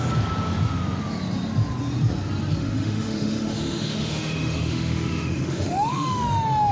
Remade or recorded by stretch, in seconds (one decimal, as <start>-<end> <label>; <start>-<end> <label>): 0.0-2.6 recorded; 2.6-6.7 remade